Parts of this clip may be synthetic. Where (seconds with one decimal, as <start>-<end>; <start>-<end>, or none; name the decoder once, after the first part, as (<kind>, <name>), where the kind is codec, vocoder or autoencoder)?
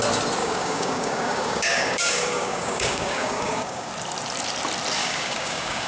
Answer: 0.4-3.9 (codec, DAC); 5.0-5.9